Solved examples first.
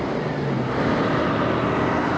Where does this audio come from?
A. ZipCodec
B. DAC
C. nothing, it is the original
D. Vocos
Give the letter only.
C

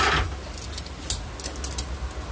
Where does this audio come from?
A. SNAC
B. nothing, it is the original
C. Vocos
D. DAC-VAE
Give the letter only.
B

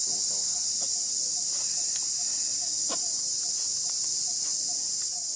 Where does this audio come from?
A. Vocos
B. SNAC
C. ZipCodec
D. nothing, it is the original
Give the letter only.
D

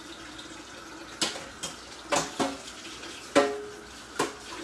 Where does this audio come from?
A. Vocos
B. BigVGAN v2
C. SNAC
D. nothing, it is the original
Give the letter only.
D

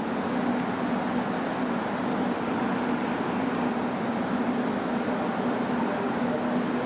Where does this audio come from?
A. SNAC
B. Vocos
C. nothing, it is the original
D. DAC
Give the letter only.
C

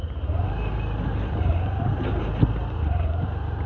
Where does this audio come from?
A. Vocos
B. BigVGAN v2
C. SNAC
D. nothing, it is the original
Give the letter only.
D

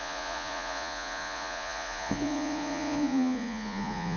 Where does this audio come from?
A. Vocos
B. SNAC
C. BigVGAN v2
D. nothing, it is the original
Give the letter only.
A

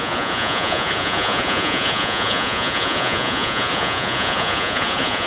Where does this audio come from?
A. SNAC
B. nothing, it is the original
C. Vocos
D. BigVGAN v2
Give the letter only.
C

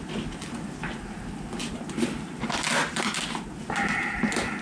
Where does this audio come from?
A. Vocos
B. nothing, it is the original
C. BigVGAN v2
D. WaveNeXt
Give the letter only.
B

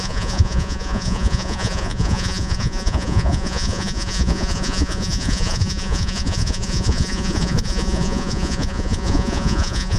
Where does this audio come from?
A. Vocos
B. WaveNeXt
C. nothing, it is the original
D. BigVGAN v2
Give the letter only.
A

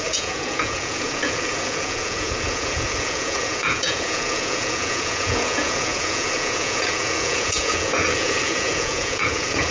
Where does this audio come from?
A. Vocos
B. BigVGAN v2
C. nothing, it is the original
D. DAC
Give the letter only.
A